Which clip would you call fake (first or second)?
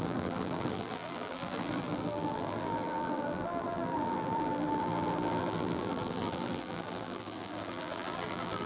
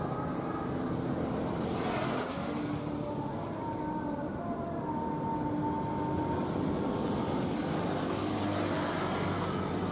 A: first